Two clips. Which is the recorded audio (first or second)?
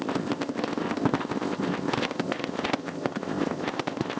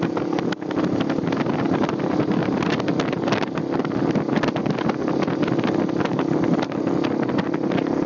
second